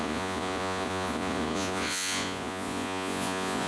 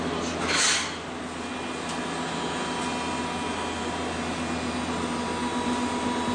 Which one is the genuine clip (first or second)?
second